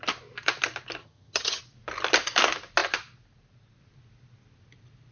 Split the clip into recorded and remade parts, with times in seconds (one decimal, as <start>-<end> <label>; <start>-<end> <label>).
0.0-1.0 recorded; 1.0-1.6 remade; 1.6-5.1 recorded

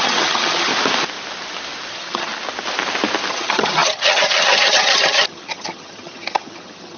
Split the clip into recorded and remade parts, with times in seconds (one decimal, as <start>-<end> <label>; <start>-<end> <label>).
0.0-0.7 remade; 0.7-1.9 recorded; 1.9-2.3 remade; 2.3-3.3 recorded; 3.3-7.0 remade

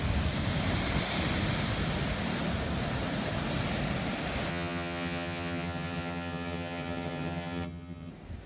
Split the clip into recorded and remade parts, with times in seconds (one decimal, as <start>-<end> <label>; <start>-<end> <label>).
0.0-4.5 recorded; 4.5-8.1 remade; 8.1-8.5 recorded

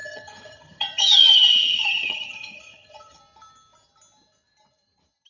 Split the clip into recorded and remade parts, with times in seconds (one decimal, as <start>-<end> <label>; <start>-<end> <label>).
0.0-3.2 remade; 3.2-5.3 recorded

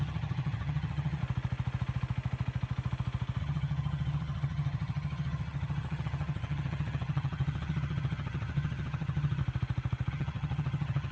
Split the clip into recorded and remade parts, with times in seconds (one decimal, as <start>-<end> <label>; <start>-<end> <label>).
0.0-1.2 remade; 1.2-3.4 recorded; 3.4-9.4 remade; 9.4-10.1 recorded; 10.1-11.1 remade

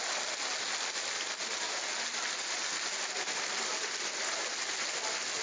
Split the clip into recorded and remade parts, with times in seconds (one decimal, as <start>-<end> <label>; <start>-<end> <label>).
0.0-5.4 recorded

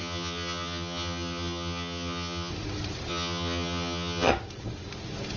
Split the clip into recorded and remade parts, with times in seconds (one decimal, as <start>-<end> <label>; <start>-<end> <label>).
0.0-2.5 remade; 2.5-3.1 recorded; 3.1-4.3 remade; 4.3-5.4 recorded

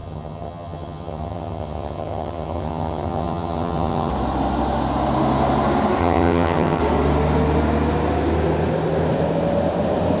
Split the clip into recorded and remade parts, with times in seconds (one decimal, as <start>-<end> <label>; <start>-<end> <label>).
0.0-4.1 remade; 4.1-6.0 recorded; 6.0-6.8 remade; 6.8-10.2 recorded